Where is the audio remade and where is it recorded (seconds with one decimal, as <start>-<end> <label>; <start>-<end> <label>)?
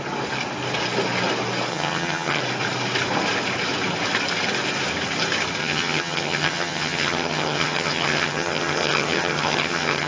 0.0-1.7 recorded; 1.7-2.4 remade; 2.4-5.6 recorded; 5.6-10.1 remade